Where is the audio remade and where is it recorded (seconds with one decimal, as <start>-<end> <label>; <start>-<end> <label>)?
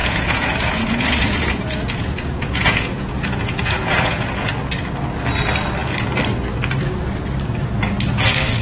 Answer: 0.0-4.5 remade; 4.5-8.6 recorded